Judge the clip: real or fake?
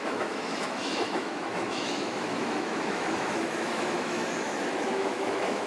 fake